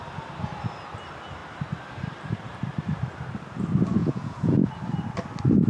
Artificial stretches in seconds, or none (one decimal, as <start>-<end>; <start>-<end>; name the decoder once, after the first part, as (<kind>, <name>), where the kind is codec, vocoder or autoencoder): 4.0-4.7 (vocoder, Vocos)